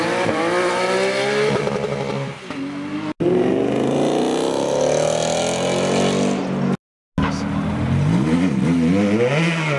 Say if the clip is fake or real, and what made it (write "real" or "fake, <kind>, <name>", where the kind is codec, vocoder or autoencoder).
real